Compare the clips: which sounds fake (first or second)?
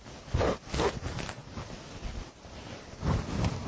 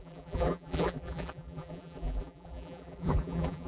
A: second